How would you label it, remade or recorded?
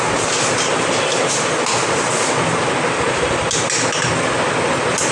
recorded